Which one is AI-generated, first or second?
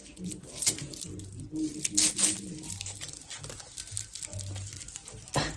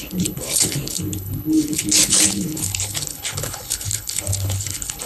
second